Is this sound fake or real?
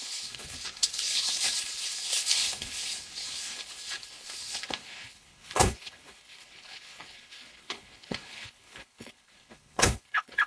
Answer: fake